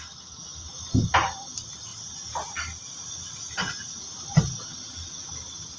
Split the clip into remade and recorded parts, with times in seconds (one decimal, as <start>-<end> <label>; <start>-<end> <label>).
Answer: 0.0-5.8 recorded